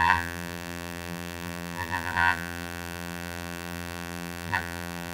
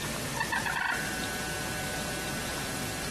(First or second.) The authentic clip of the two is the second